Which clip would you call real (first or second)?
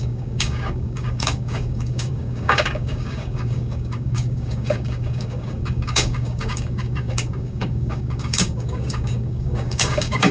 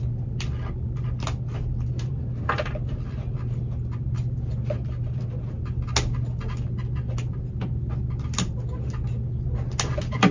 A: second